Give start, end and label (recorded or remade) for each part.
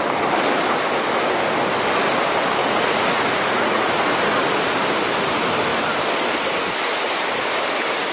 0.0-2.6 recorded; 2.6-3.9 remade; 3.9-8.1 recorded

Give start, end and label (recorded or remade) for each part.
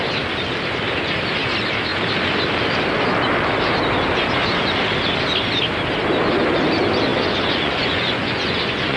0.0-7.1 recorded; 7.1-9.0 remade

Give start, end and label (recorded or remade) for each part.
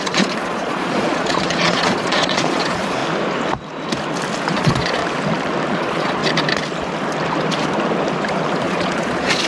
0.0-3.0 remade; 3.0-4.5 recorded; 4.5-5.0 remade; 5.0-5.7 recorded; 5.7-6.2 remade; 6.2-8.6 recorded; 8.6-9.5 remade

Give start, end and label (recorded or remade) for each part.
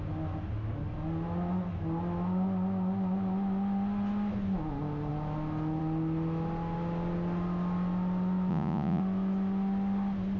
0.0-8.5 recorded; 8.5-9.0 remade; 9.0-10.4 recorded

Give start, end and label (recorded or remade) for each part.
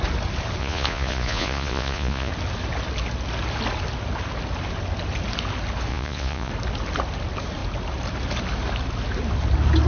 0.0-0.6 recorded; 0.6-2.3 remade; 2.3-5.9 recorded; 5.9-6.5 remade; 6.5-9.9 recorded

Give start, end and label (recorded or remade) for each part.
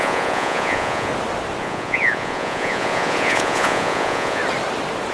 0.0-1.1 remade; 1.1-1.6 recorded; 1.6-4.4 remade; 4.4-5.1 recorded